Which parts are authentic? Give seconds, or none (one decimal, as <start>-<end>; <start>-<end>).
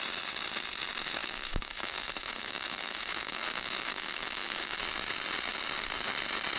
0.0-1.2; 4.8-6.6